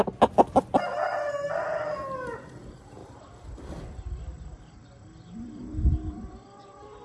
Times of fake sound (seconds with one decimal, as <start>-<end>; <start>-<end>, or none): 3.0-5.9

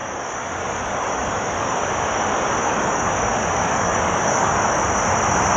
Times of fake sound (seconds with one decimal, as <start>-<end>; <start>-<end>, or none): 0.0-1.8; 2.6-4.8

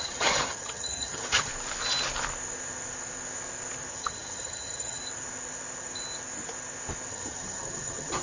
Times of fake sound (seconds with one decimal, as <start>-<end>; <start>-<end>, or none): 0.0-1.5; 3.9-5.0; 7.1-8.2

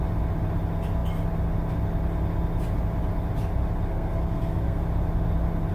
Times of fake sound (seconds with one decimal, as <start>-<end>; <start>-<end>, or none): 3.9-4.8

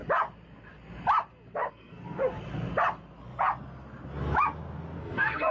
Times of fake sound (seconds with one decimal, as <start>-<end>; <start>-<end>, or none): 1.7-2.2; 5.0-5.5

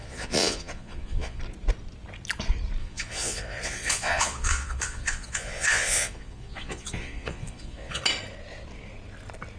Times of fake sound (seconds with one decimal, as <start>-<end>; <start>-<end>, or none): 0.0-1.4; 2.8-8.0

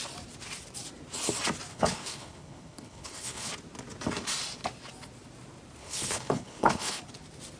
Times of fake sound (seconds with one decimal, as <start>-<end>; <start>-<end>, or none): 1.7-3.5; 5.8-7.0

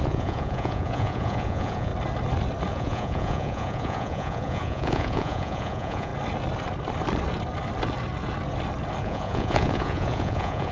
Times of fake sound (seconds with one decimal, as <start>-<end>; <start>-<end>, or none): 0.0-1.9; 2.7-6.1; 9.0-10.7